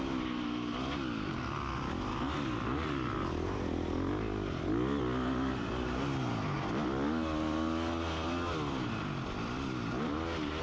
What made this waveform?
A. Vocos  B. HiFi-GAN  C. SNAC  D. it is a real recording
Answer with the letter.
D